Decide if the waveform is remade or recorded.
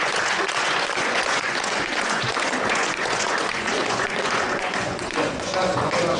remade